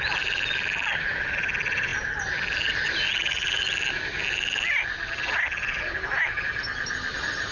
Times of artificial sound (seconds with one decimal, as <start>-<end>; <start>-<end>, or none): none